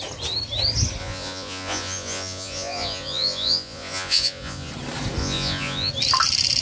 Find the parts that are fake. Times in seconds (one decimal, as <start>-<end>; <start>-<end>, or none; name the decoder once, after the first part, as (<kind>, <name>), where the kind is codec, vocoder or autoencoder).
1.0-4.7 (vocoder, Vocos); 5.2-5.9